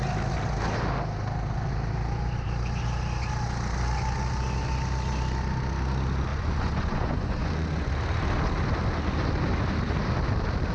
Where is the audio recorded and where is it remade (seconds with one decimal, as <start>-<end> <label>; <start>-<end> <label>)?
0.0-6.3 recorded; 6.3-7.9 remade; 7.9-10.7 recorded